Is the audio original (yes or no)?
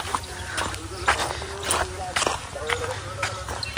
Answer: yes